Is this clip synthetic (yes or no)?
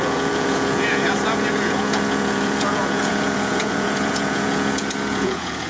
yes